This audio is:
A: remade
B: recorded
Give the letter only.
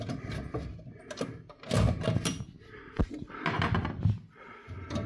B